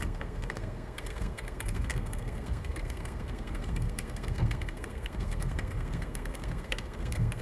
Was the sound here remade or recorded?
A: remade